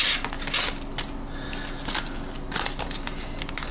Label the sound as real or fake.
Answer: real